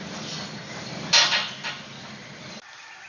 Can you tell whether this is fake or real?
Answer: real